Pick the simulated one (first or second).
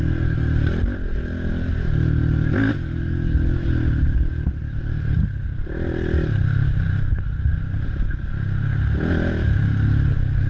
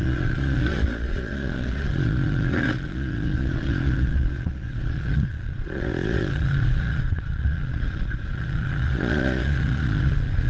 second